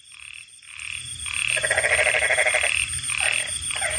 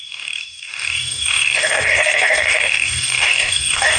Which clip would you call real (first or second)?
first